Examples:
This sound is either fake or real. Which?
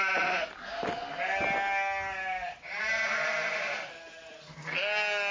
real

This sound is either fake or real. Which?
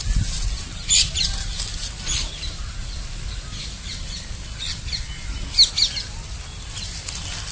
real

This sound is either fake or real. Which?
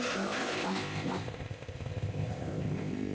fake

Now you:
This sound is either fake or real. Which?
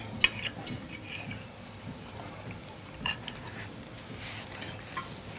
real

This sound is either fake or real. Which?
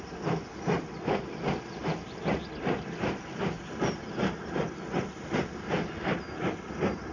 real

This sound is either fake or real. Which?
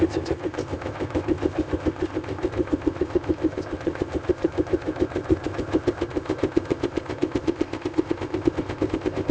fake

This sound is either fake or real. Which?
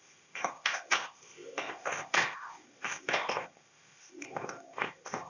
fake